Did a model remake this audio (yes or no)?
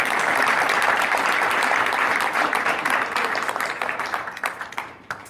yes